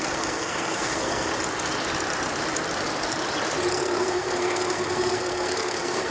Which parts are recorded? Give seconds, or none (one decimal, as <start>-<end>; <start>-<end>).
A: 1.3-3.7